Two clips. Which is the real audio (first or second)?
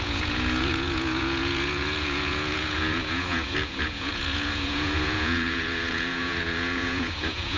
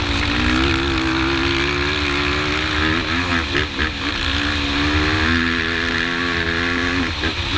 second